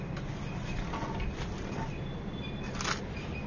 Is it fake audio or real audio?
real